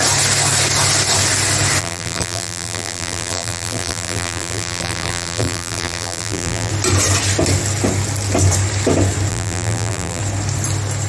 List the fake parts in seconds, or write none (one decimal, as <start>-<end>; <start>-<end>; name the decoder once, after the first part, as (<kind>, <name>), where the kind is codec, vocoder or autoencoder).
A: 1.8-6.7 (vocoder, BigVGAN v2); 9.3-10.2

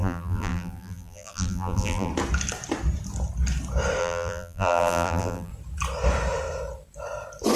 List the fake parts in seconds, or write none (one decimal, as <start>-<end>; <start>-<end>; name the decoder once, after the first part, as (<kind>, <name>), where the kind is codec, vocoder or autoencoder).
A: 0.0-2.1 (vocoder, BigVGAN v2); 4.0-5.5

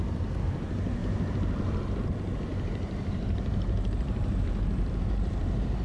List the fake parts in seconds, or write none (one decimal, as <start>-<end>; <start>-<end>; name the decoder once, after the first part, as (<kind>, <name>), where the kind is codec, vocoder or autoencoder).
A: 1.0-1.8 (vocoder, BigVGAN v2); 2.5-5.8

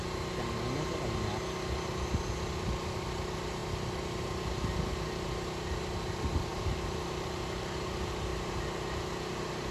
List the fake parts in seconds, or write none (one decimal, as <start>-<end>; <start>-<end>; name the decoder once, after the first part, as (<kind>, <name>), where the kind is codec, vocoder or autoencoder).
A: 6.5-7.7 (vocoder, BigVGAN v2)